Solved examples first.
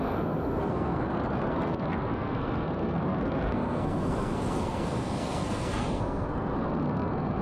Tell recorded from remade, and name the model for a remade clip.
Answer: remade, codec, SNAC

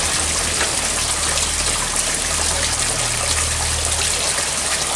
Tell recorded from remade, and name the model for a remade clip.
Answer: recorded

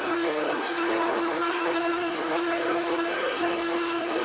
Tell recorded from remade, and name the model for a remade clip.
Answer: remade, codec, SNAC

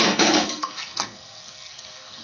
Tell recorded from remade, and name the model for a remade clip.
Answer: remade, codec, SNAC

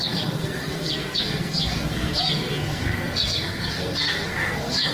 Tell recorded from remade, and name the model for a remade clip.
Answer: remade, codec, SNAC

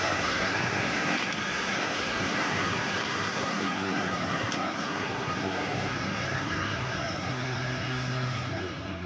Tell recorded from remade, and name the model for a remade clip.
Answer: remade, codec, SNAC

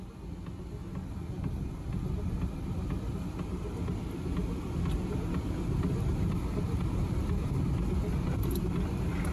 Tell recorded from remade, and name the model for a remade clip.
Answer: recorded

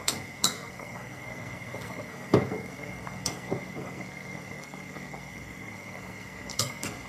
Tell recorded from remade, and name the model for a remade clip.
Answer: remade, codec, SNAC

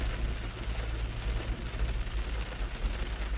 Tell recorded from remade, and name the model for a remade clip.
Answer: recorded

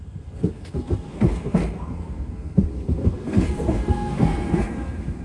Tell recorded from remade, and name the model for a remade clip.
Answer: remade, codec, SNAC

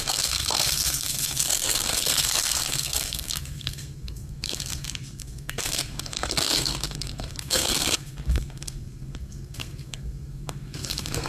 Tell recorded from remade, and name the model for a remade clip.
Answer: remade, codec, SNAC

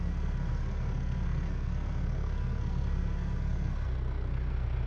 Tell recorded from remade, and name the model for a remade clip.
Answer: remade, codec, SNAC